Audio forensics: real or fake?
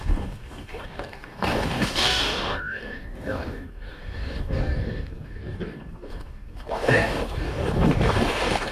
fake